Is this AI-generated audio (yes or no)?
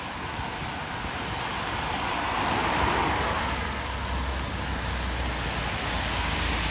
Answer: no